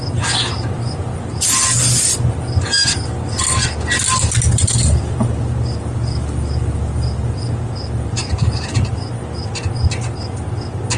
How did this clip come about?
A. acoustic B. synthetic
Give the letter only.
A